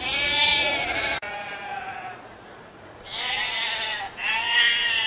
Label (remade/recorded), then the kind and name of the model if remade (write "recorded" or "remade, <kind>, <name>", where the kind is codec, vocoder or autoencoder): remade, vocoder, Vocos